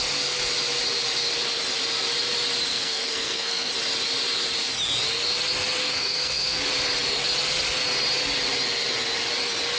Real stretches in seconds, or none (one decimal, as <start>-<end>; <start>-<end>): 0.0-2.7; 3.7-5.8; 6.6-9.8